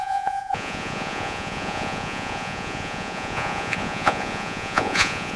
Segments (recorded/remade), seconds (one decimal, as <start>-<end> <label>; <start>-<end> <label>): 0.0-5.4 remade